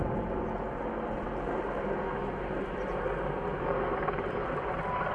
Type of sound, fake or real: real